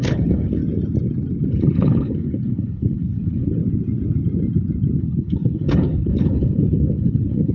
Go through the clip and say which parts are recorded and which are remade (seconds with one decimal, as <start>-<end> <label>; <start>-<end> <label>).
0.0-0.6 remade; 0.6-1.5 recorded; 1.5-3.6 remade; 3.6-5.0 recorded; 5.0-7.5 remade

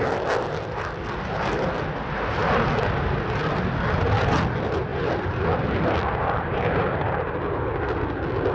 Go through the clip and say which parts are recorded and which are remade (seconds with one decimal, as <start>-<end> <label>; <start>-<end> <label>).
0.0-8.5 recorded

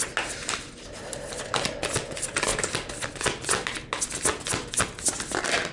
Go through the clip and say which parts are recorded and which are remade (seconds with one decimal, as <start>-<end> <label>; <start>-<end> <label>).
0.0-5.7 recorded

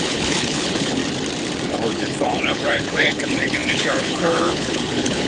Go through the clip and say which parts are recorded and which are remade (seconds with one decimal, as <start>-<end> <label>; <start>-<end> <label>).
0.0-1.0 remade; 1.0-1.7 recorded; 1.7-5.3 remade

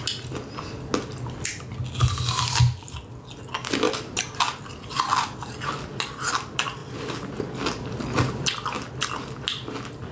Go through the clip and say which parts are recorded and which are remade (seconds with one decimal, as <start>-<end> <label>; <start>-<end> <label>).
0.0-10.1 recorded

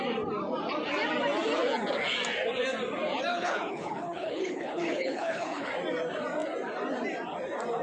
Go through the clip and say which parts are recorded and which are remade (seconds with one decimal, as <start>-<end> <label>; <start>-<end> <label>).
0.0-3.3 recorded; 3.3-5.7 remade; 5.7-7.8 recorded